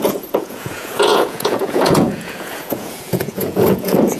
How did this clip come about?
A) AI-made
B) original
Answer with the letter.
A